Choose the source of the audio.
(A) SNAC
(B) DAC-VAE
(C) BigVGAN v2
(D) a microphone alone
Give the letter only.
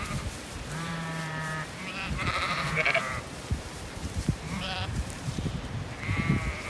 C